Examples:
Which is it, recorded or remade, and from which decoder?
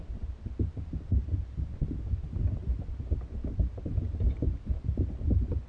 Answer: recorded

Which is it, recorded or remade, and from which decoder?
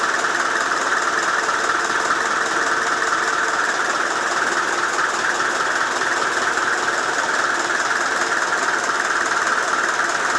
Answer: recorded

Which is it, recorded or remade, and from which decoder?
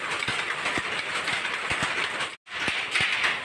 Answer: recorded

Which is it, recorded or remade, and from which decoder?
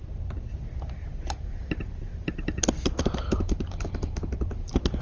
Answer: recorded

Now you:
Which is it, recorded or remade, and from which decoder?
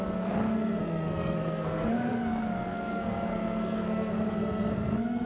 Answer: remade, codec, SNAC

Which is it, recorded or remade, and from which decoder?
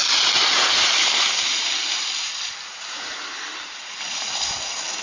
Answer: recorded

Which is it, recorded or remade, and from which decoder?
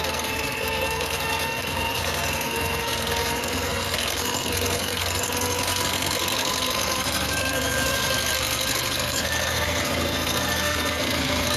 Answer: remade, codec, SNAC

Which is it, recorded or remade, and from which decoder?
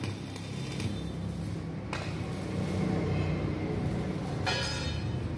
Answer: recorded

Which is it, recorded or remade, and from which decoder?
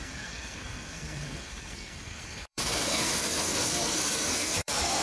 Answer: remade, codec, SNAC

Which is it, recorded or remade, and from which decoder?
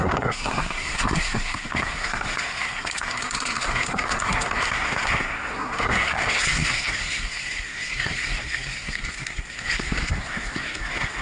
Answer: remade, codec, SNAC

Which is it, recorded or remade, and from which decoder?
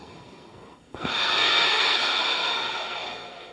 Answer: remade, codec, SNAC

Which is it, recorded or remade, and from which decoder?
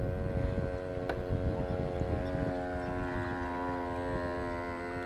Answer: recorded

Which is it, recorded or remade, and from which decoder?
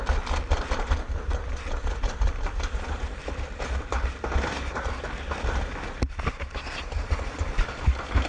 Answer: recorded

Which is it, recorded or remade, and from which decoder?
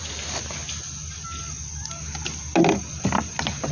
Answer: recorded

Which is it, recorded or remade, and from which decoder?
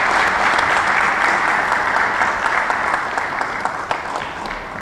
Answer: recorded